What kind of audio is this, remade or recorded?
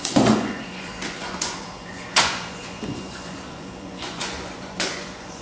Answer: remade